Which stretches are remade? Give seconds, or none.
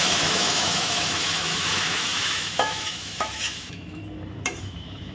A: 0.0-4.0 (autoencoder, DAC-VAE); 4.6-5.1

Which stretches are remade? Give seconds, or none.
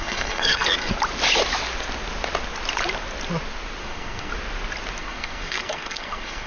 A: 0.0-0.9 (codec, SNAC); 3.8-4.3; 5.0-6.5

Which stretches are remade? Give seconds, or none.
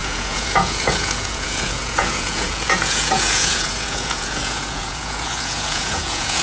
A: 0.0-6.4 (vocoder, Vocos)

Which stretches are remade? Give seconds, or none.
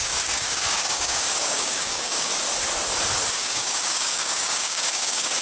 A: 0.0-2.3 (codec, DAC); 3.3-5.4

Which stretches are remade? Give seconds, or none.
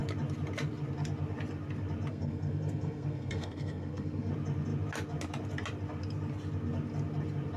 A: 2.1-4.3 (codec, SNAC)